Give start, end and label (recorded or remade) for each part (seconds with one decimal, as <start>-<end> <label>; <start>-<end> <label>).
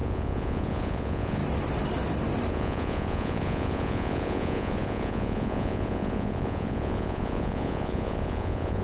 0.0-1.4 remade; 1.4-2.5 recorded; 2.5-8.8 remade